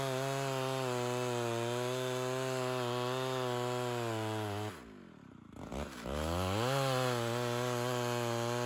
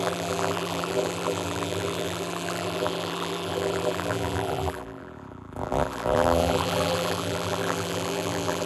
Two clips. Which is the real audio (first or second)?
first